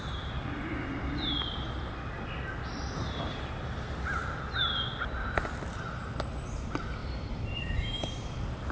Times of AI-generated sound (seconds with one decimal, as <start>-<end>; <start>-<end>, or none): 7.0-8.7